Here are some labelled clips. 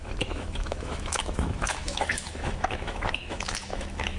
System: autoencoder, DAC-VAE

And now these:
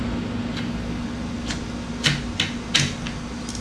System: none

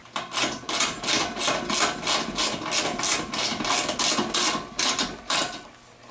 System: none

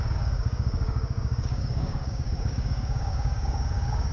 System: codec, DAC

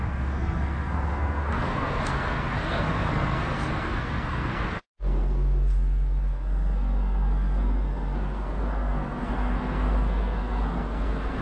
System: codec, SNAC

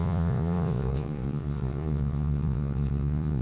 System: vocoder, Vocos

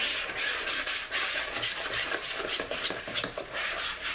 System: none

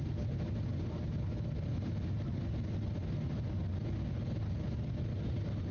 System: none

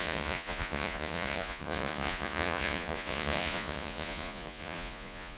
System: vocoder, Vocos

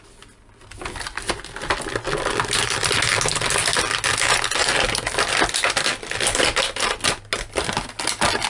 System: none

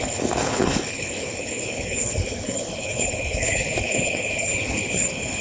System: codec, HILCodec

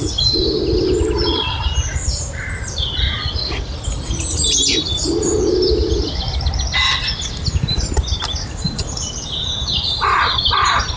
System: none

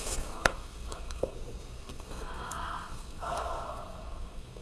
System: codec, SNAC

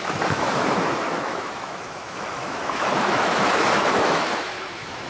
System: autoencoder, DAC-VAE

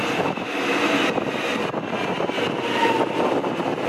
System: none